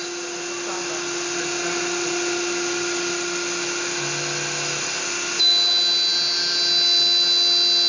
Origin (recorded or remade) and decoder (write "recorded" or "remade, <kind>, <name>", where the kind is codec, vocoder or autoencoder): recorded